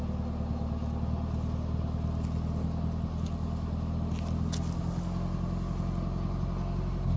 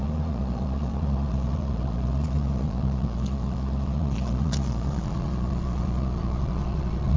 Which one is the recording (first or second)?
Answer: first